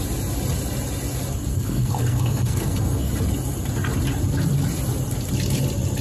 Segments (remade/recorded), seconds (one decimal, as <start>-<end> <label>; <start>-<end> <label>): 0.0-1.5 recorded; 1.5-3.1 remade; 3.1-6.0 recorded